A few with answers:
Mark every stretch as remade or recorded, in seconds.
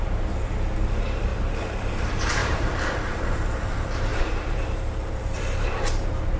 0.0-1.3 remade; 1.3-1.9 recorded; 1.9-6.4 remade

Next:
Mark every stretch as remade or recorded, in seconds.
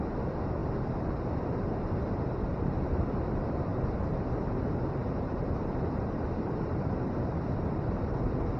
0.0-2.5 recorded; 2.5-3.1 remade; 3.1-5.0 recorded; 5.0-7.1 remade; 7.1-8.6 recorded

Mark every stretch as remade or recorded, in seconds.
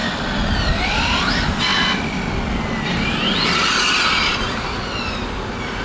0.0-5.8 recorded